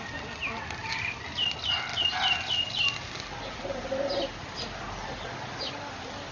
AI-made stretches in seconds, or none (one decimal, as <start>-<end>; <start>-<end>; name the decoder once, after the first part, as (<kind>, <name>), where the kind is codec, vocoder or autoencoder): none